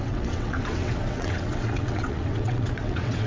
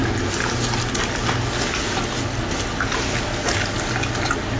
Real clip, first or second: second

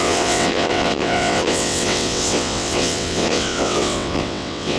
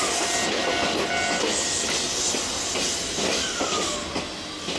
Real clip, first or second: second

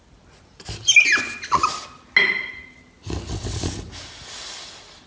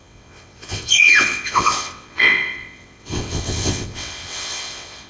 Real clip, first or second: first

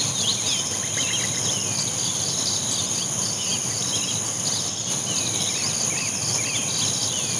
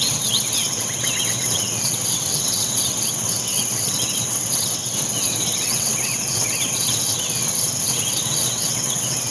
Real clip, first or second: first